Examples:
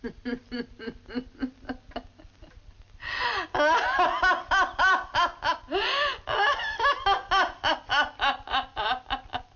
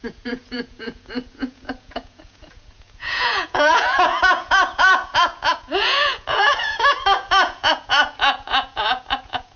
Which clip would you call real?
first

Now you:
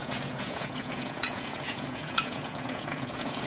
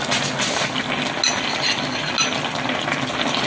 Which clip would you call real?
second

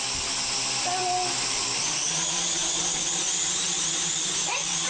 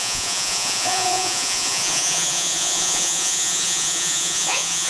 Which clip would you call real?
first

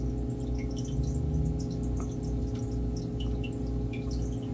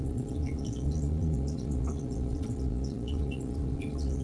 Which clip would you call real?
first